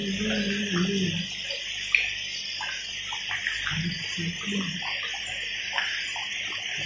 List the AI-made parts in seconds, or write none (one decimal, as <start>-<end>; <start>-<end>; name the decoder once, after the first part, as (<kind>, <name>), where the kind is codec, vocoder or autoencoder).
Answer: none